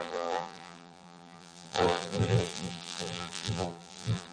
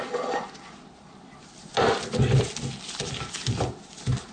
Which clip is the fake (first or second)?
first